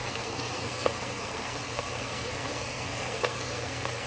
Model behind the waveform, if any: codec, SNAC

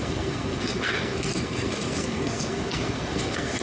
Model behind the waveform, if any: codec, SNAC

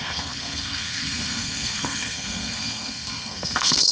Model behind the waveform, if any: codec, SNAC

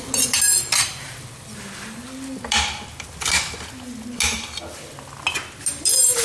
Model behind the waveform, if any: none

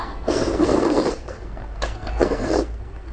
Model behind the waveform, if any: codec, SNAC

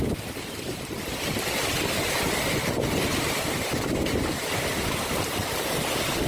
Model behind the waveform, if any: none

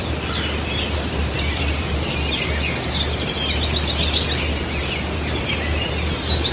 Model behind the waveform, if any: none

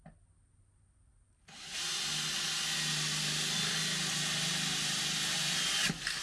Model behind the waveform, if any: none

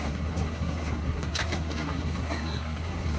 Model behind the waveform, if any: codec, SNAC